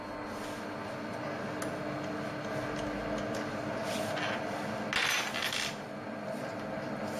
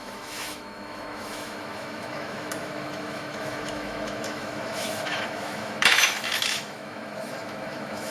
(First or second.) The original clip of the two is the first